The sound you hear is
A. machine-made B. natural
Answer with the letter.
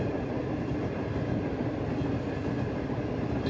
B